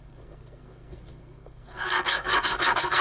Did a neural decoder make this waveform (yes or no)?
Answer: yes